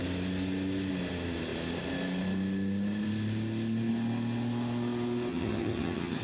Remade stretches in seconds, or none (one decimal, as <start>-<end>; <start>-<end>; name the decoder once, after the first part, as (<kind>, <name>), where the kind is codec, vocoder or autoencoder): 5.3-6.2 (vocoder, HiFi-GAN)